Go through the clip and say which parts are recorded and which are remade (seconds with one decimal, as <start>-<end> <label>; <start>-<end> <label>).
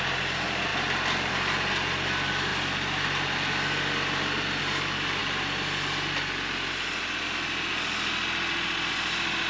0.0-9.5 recorded